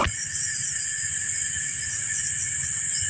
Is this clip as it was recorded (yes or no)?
yes